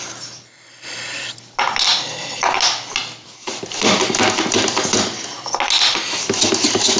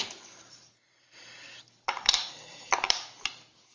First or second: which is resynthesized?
second